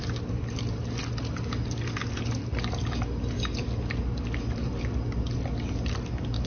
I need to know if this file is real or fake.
real